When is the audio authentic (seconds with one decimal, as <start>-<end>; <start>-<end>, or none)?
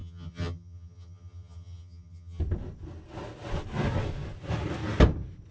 2.4-5.5